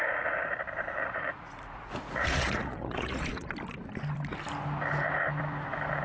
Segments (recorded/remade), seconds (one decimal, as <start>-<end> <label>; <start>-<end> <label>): 0.0-0.9 recorded; 0.9-3.5 remade; 3.5-6.0 recorded